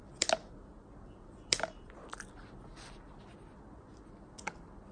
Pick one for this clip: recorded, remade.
recorded